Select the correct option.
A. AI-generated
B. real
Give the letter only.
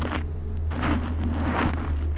B